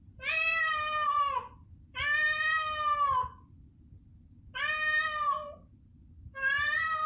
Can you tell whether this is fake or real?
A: real